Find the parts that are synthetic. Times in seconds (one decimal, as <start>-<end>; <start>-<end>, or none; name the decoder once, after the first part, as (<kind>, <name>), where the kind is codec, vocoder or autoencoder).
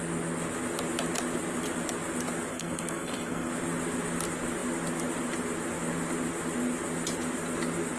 2.5-3.5 (codec, SNAC)